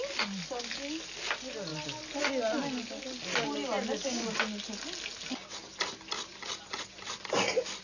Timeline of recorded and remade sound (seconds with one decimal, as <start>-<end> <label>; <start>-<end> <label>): 0.0-7.8 recorded